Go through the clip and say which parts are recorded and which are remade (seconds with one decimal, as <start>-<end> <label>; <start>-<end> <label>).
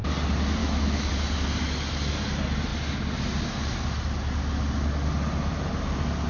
0.0-0.6 recorded; 0.6-1.1 remade; 1.1-6.3 recorded